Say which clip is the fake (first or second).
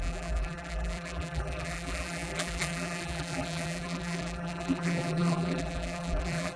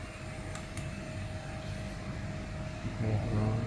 first